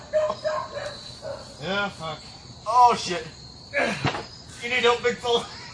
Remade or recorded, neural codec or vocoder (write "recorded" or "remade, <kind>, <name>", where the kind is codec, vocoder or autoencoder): recorded